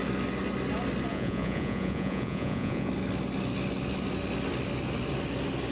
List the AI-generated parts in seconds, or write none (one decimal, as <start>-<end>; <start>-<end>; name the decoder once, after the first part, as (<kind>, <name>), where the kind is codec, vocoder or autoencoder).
1.1-2.9 (vocoder, Vocos)